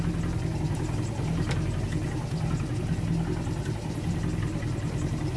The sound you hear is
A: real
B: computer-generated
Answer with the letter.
A